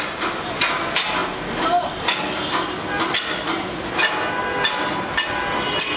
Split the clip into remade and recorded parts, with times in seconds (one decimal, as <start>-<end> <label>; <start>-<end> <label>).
0.0-6.0 recorded